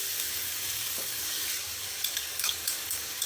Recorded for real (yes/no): no